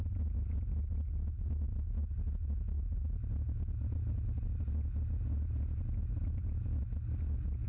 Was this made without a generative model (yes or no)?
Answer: yes